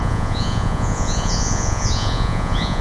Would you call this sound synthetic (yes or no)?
yes